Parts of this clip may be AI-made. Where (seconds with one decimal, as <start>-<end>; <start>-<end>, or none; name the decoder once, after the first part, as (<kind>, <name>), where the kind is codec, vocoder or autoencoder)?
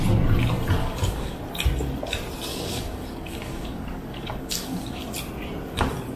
0.8-1.4 (codec, DAC); 2.5-5.0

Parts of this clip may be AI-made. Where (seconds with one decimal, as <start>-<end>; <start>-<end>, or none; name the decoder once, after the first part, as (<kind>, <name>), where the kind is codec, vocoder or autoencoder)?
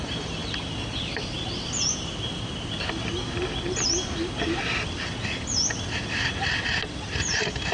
none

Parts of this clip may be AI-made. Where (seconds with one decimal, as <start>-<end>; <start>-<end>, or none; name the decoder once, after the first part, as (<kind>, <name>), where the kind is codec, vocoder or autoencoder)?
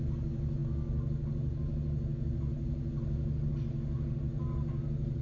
none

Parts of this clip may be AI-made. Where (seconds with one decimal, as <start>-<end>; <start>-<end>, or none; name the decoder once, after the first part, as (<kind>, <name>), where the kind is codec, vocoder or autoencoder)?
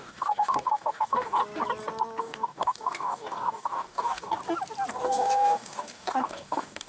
0.0-1.4 (codec, DAC); 2.2-4.4; 4.9-6.9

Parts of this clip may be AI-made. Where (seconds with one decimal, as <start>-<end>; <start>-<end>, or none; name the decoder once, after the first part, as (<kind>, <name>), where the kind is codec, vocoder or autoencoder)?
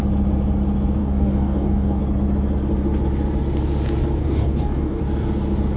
1.0-2.0 (codec, DAC); 4.2-5.0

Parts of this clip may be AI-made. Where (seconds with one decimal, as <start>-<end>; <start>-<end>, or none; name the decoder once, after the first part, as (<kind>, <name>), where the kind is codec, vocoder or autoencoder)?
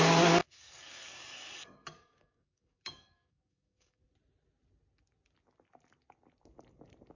0.4-4.0 (codec, DAC)